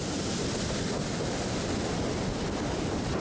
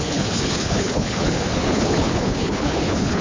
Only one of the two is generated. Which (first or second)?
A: second